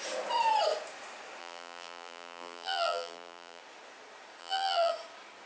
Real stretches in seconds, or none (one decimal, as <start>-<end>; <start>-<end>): 0.0-1.4; 3.6-4.4; 4.9-5.5

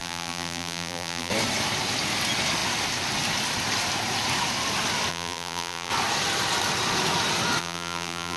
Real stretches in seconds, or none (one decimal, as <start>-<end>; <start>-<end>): 1.3-5.1; 5.9-7.6

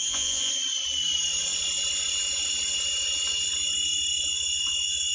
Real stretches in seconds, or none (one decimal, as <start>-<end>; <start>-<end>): 0.5-5.1